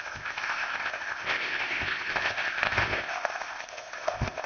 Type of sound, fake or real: fake